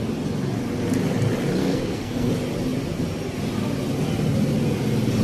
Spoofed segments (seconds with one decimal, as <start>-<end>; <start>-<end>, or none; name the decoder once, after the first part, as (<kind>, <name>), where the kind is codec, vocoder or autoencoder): 1.6-2.3 (codec, SNAC)